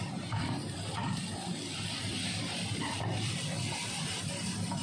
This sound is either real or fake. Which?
fake